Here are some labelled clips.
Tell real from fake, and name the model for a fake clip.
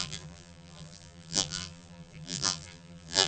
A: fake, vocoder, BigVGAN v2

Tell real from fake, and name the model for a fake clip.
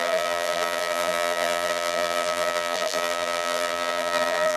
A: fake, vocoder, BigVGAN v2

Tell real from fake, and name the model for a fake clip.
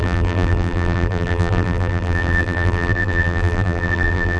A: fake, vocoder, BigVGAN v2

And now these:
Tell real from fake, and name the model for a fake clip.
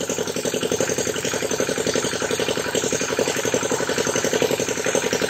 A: fake, vocoder, BigVGAN v2